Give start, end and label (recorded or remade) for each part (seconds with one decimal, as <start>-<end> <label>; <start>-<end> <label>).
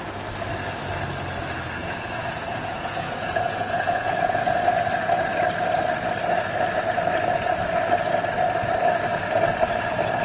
0.0-1.8 recorded; 1.8-4.6 remade; 4.6-10.2 recorded